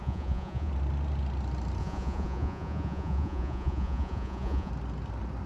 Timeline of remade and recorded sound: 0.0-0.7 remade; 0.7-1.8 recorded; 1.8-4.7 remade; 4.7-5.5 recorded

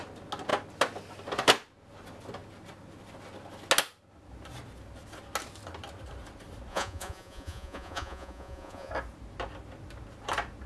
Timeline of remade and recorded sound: 0.0-6.7 recorded; 6.7-8.9 remade; 8.9-10.7 recorded

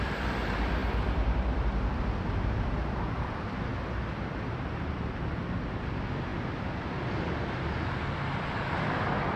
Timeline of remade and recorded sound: 0.0-3.7 remade; 3.7-5.7 recorded; 5.7-9.4 remade

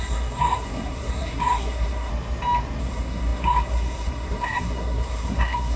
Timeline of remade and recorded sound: 0.0-2.1 remade; 2.1-2.8 recorded; 2.8-5.8 remade

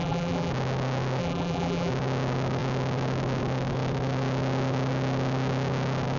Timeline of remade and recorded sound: 0.0-0.5 remade; 0.5-1.2 recorded; 1.2-1.9 remade; 1.9-6.2 recorded

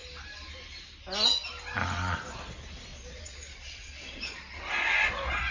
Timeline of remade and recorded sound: 0.0-2.9 recorded; 2.9-4.6 remade; 4.6-5.5 recorded

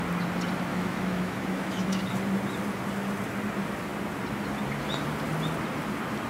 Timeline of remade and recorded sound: 0.0-0.7 recorded; 0.7-2.0 remade; 2.0-6.3 recorded

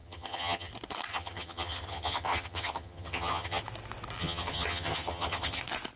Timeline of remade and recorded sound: 0.0-0.7 remade; 0.7-1.1 recorded; 1.1-3.6 remade; 3.6-4.2 recorded; 4.2-5.6 remade; 5.6-6.0 recorded